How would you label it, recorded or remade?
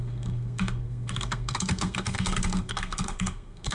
remade